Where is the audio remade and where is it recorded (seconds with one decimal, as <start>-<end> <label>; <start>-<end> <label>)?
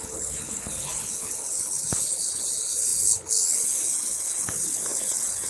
0.0-5.5 remade